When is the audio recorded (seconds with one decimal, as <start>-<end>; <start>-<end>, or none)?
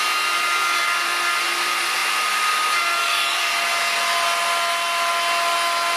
0.0-3.0; 3.5-6.0